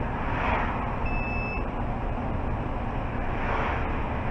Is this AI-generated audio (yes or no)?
no